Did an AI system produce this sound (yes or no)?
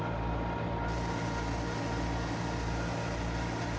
no